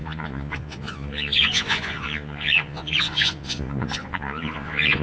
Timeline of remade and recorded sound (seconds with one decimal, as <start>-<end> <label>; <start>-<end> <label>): 0.0-5.0 remade